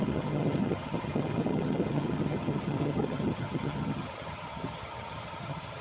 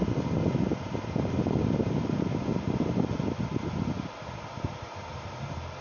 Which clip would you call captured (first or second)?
second